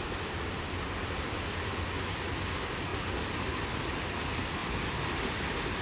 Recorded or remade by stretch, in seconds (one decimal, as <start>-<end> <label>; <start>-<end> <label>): 0.0-5.8 recorded